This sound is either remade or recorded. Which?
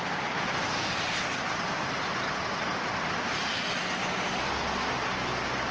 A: recorded